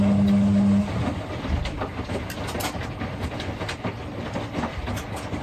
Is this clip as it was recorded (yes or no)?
yes